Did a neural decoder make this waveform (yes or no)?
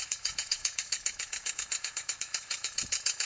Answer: yes